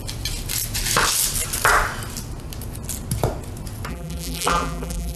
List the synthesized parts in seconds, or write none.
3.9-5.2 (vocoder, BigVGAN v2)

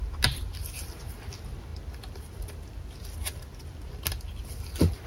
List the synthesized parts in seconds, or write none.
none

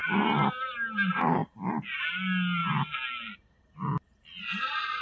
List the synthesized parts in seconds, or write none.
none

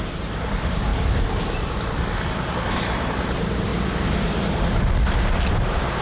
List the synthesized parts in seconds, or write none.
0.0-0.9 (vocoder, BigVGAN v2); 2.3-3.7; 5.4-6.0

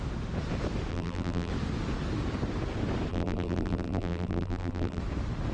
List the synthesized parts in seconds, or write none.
0.9-1.5 (vocoder, BigVGAN v2); 3.1-5.0